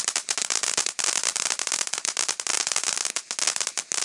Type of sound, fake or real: real